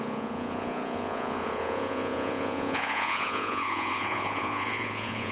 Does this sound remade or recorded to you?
remade